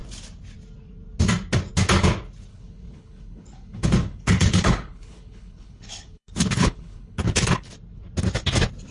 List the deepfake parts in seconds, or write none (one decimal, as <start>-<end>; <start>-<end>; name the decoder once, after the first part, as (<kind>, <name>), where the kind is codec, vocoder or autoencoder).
2.5-7.7 (codec, HILCodec)